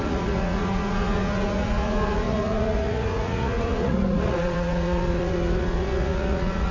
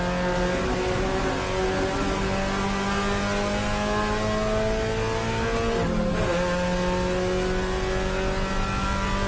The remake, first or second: first